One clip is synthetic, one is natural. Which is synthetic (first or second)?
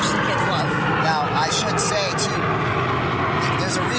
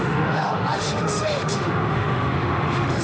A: second